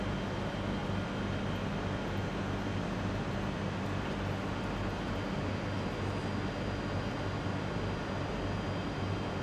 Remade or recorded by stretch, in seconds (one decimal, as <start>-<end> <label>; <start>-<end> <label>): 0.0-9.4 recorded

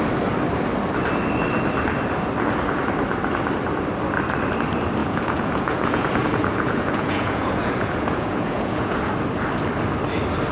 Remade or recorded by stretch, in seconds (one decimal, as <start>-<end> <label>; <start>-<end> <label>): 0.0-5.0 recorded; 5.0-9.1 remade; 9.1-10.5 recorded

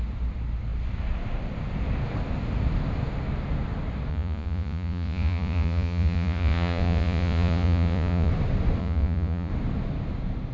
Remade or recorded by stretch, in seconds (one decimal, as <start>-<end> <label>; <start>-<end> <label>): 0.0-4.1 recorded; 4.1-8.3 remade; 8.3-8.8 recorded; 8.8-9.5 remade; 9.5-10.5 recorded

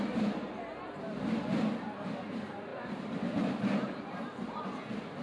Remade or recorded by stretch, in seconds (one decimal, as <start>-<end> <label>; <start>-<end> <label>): 0.0-2.7 recorded; 2.7-4.1 remade; 4.1-5.2 recorded

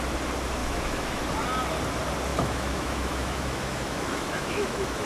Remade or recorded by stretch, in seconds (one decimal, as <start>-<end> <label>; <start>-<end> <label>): 0.0-0.6 recorded; 0.6-1.2 remade; 1.2-2.3 recorded; 2.3-5.1 remade

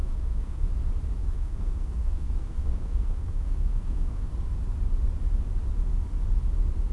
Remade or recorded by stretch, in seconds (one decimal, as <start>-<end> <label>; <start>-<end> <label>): 0.0-0.7 remade; 0.7-1.2 recorded; 1.2-4.3 remade; 4.3-6.9 recorded